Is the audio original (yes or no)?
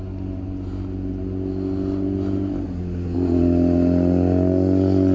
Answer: yes